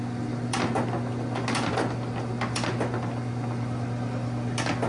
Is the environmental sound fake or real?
real